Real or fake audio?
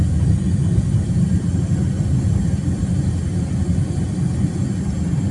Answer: real